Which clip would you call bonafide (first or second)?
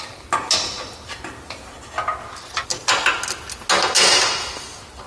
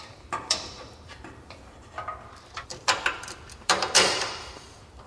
first